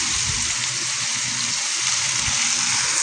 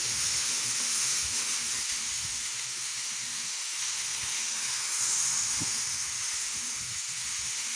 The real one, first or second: first